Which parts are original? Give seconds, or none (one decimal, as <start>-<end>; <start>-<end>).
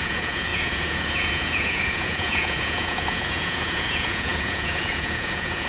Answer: none